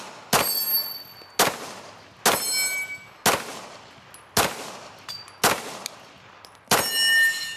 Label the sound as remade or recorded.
recorded